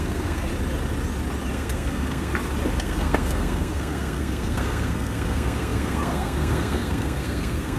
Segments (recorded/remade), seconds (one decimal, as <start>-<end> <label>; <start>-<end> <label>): 0.0-0.5 remade; 0.5-1.5 recorded; 1.5-2.3 remade; 2.3-2.8 recorded; 2.8-7.8 remade